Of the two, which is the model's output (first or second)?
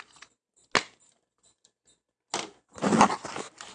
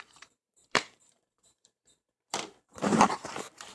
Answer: second